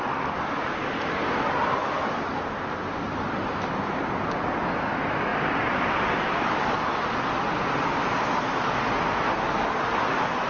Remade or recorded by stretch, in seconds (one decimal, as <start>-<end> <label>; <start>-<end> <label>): 0.0-10.5 recorded